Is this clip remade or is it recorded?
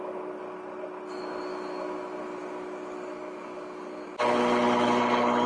recorded